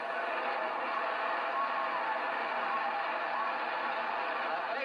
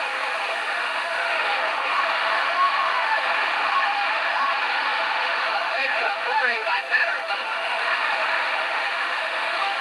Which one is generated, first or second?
second